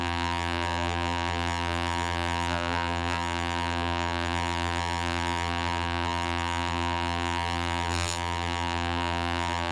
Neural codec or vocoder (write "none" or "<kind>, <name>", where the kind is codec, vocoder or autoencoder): vocoder, BigVGAN v2